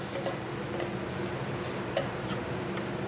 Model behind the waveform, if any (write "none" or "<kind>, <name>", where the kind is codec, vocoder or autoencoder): none